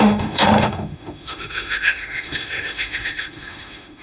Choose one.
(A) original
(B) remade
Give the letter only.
B